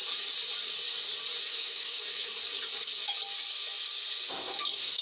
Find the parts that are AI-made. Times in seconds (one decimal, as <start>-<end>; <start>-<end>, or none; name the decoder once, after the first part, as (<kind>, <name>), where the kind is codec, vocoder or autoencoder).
1.4-2.3 (autoencoder, DAC-VAE); 2.8-3.2; 4.4-5.0